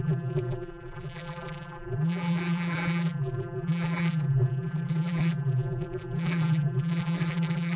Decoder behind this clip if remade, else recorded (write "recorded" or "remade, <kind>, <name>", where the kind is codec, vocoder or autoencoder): remade, vocoder, BigVGAN v2